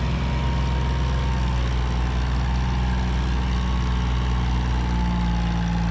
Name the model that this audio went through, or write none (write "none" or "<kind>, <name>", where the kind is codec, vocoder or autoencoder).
none